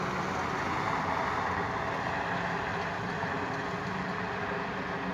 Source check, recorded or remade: recorded